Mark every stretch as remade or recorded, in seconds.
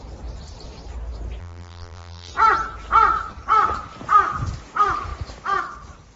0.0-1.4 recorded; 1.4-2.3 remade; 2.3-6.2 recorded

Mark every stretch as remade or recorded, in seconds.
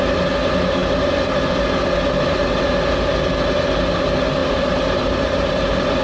0.0-4.4 recorded; 4.4-6.0 remade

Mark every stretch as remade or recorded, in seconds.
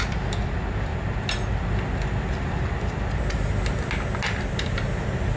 0.0-5.4 recorded